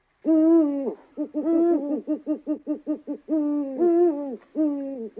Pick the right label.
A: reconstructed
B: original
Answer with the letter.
B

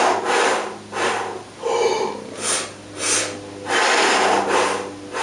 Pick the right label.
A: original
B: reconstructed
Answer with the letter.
A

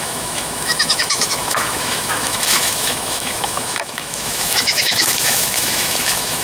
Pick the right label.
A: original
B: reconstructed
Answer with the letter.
B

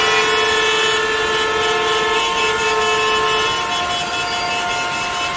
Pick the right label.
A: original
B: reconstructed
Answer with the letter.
A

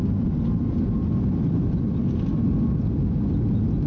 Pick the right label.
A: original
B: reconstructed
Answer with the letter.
A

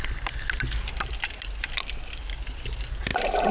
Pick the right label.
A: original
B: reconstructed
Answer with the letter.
A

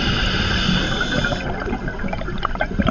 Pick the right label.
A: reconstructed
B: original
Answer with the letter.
B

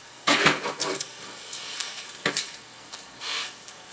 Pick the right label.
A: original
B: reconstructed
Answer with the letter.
B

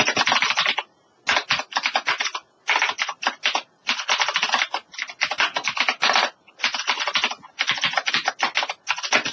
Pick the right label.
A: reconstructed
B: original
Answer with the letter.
B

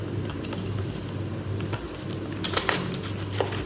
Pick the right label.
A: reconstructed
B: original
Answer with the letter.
B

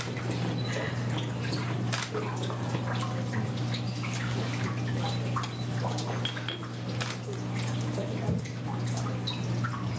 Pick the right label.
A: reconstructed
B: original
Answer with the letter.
B